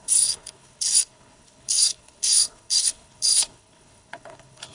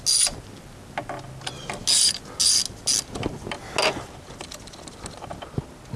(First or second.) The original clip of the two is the second